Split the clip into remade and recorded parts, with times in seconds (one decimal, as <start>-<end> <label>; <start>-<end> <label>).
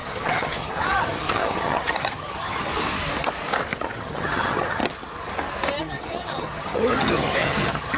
0.0-2.7 remade; 2.7-3.8 recorded; 3.8-4.8 remade; 4.8-5.8 recorded; 5.8-8.0 remade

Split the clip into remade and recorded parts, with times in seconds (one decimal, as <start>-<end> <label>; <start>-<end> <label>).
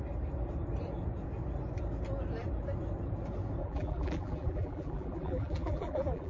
0.0-3.6 recorded; 3.6-6.3 remade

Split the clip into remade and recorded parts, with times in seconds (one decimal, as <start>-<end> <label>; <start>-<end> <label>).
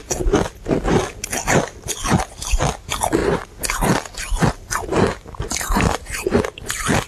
0.0-7.1 recorded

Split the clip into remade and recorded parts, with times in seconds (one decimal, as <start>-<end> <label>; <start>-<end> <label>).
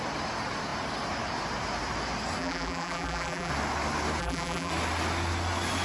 0.0-2.4 recorded; 2.4-3.5 remade; 3.5-4.2 recorded; 4.2-4.7 remade; 4.7-5.8 recorded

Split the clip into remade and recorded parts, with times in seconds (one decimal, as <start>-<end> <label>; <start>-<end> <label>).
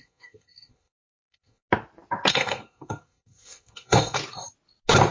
0.0-1.6 remade; 1.6-2.3 recorded; 2.3-4.2 remade; 4.2-5.1 recorded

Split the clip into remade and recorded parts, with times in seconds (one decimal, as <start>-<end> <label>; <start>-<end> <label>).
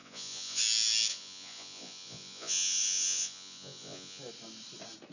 0.0-0.6 remade; 0.6-1.1 recorded; 1.1-4.2 remade; 4.2-5.1 recorded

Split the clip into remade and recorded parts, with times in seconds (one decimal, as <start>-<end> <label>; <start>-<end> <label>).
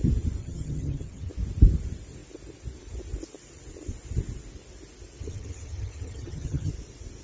0.0-0.4 recorded; 0.4-1.3 remade; 1.3-5.2 recorded; 5.2-6.7 remade; 6.7-7.2 recorded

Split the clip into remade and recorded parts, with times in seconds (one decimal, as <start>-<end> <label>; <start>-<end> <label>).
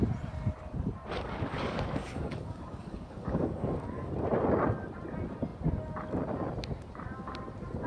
0.0-1.1 recorded; 1.1-4.1 remade; 4.1-7.9 recorded